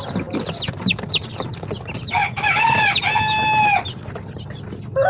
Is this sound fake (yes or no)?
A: no